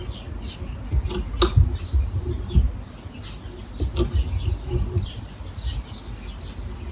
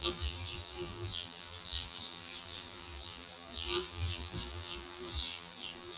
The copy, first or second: second